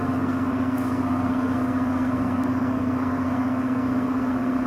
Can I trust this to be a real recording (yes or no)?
no